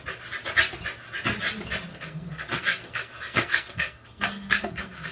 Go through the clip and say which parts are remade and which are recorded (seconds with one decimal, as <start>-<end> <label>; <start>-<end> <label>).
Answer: 0.0-1.9 recorded; 1.9-5.1 remade